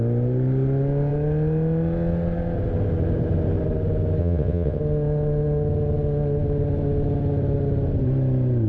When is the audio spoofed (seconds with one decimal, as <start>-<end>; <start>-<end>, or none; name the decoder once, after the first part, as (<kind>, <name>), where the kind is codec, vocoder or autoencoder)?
4.2-4.8 (vocoder, WaveNeXt)